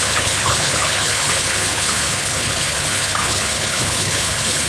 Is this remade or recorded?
remade